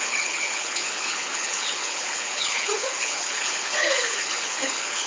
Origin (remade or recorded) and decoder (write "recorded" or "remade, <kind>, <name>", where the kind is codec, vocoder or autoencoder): remade, codec, HILCodec